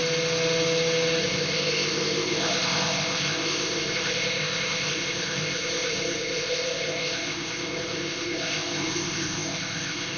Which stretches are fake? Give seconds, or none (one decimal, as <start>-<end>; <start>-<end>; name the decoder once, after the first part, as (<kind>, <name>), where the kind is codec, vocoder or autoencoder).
1.2-10.2 (codec, ZipCodec)